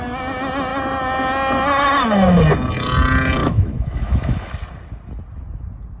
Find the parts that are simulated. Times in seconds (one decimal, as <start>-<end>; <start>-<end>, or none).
3.4-4.5